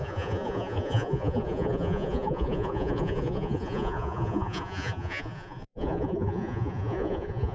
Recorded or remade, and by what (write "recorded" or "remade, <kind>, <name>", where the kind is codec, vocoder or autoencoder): remade, vocoder, Vocos